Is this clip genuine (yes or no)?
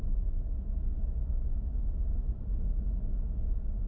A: yes